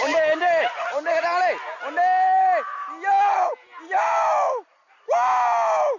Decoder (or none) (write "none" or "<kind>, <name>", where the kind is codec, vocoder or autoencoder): none